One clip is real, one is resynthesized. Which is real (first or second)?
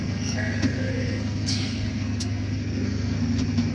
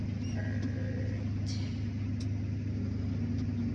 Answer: second